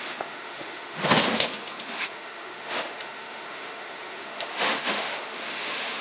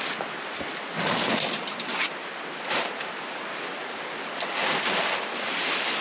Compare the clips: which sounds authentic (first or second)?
second